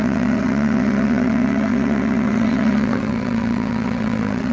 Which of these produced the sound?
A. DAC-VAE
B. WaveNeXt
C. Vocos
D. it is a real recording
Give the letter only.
B